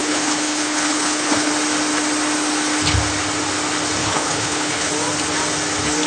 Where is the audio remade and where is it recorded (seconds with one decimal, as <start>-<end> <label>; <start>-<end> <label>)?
0.0-1.5 remade; 1.5-4.0 recorded; 4.0-4.9 remade; 4.9-6.1 recorded